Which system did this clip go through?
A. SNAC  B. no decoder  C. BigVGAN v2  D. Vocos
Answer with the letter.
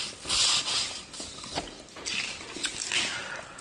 B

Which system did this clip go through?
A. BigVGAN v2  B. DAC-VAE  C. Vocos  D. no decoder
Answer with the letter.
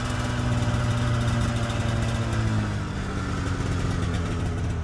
D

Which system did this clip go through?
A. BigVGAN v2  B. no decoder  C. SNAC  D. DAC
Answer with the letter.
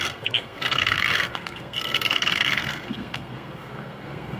C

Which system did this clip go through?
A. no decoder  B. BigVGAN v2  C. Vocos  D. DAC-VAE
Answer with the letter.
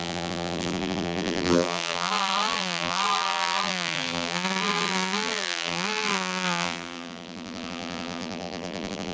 B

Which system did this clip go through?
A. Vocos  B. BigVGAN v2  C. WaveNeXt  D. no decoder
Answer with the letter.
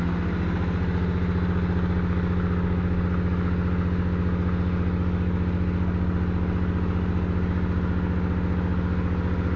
D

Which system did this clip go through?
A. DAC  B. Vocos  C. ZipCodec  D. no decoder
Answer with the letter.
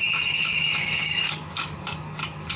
A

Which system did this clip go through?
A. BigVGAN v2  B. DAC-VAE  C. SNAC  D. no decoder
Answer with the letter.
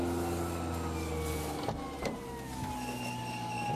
D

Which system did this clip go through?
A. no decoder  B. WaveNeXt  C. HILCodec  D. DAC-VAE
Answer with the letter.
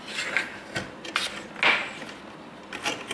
A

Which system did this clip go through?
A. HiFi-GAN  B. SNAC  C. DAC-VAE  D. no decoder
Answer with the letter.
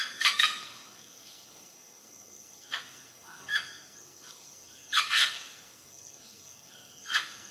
B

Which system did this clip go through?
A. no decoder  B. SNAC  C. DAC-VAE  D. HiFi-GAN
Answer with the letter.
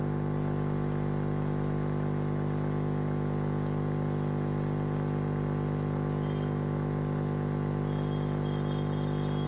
A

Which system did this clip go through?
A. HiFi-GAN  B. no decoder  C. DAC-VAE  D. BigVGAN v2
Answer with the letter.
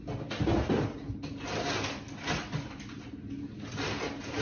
B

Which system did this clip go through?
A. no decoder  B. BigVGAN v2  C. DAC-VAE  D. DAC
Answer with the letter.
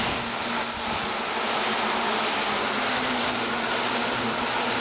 A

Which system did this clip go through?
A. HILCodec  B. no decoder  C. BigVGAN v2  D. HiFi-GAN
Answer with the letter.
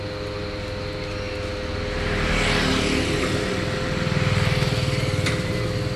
B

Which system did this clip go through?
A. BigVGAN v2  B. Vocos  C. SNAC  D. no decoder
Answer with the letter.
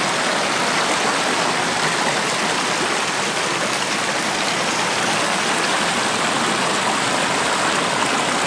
D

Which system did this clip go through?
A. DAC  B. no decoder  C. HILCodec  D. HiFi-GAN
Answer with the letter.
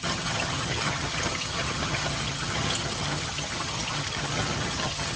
D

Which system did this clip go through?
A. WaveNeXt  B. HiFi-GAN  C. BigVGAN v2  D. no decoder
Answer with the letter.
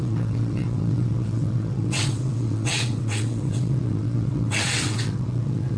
A